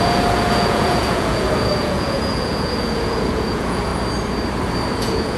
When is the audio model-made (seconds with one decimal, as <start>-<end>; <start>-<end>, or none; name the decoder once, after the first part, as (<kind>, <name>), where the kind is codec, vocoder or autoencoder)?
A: 0.0-3.9 (vocoder, Vocos); 5.0-5.4

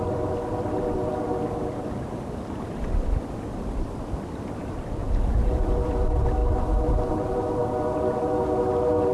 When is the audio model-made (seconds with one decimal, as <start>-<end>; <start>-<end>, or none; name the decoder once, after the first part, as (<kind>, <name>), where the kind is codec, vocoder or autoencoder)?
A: 5.0-5.7 (vocoder, Vocos)

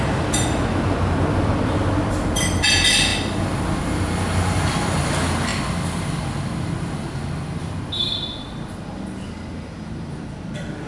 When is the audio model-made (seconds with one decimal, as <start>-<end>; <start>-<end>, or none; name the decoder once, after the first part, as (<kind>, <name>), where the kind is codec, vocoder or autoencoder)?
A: none

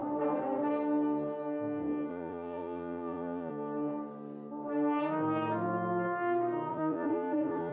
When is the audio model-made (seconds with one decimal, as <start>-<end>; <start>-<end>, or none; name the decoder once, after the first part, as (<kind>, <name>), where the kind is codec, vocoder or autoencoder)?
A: 2.1-3.5 (vocoder, Vocos); 6.7-7.7

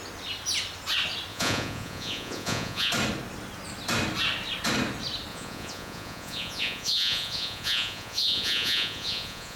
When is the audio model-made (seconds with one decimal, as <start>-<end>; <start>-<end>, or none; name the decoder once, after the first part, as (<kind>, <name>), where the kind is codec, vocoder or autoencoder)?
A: 1.3-2.9 (vocoder, Vocos); 5.3-9.6

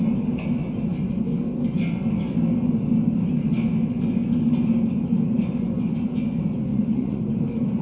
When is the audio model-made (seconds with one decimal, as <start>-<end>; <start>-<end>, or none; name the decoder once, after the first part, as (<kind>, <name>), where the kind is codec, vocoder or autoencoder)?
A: 6.7-7.3 (vocoder, Vocos)

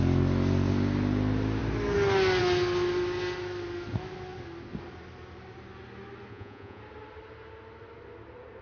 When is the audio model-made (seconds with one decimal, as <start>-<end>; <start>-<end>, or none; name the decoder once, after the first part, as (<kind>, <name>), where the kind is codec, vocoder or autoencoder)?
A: 6.3-6.8 (vocoder, Vocos)

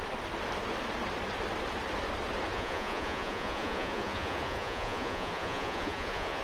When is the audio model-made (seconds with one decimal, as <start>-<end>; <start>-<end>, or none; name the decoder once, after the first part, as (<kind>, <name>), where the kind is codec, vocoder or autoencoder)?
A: 2.5-6.4 (vocoder, Vocos)